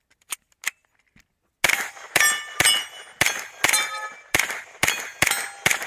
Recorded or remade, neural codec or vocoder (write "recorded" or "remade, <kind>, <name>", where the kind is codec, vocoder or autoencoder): recorded